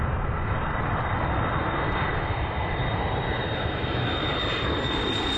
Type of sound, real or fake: fake